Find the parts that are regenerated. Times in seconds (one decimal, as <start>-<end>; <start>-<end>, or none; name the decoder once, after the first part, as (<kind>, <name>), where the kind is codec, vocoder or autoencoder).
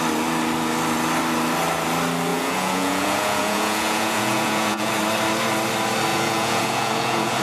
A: 2.3-4.9 (vocoder, Vocos); 6.1-7.4